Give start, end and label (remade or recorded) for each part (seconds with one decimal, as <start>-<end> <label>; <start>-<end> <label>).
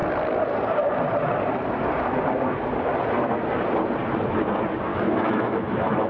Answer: 0.0-4.9 recorded; 4.9-6.1 remade